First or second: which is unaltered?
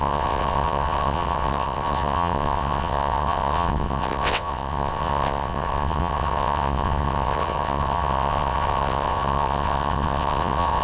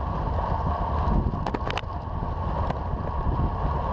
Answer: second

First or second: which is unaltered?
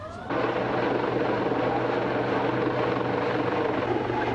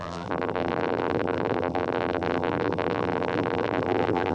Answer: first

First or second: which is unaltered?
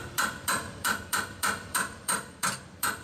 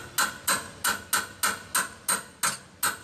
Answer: second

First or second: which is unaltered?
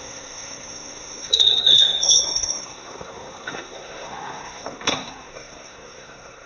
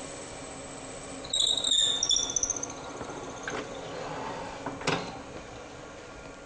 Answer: second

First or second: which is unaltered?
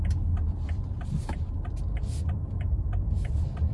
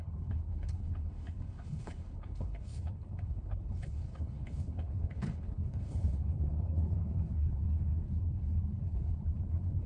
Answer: first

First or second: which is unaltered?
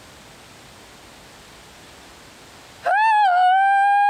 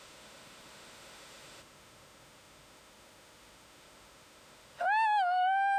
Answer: first